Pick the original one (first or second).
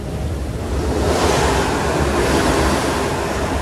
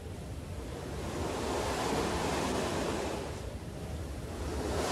first